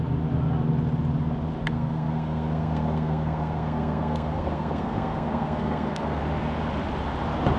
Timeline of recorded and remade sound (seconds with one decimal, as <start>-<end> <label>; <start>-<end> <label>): 0.0-1.6 recorded; 1.6-6.2 remade; 6.2-7.6 recorded